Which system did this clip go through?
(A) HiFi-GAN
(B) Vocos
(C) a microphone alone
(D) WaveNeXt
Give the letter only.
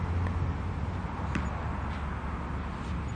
C